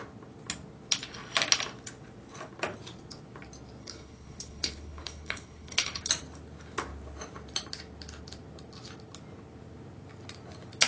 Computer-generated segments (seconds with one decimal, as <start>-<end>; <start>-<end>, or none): 3.8-6.0